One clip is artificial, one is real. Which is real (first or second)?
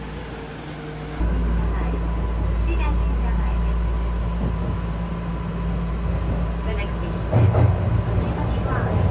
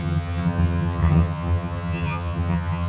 first